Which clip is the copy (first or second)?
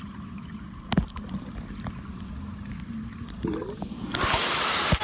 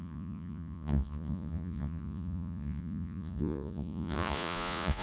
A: second